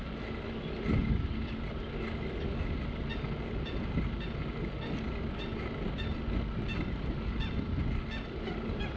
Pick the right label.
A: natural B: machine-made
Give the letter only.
A